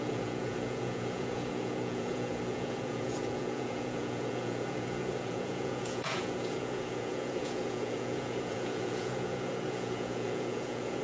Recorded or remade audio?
remade